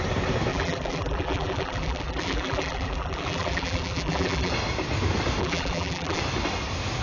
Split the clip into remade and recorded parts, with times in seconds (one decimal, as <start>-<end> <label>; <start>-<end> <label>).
0.0-0.5 recorded; 0.5-4.5 remade; 4.5-5.4 recorded; 5.4-6.2 remade; 6.2-7.0 recorded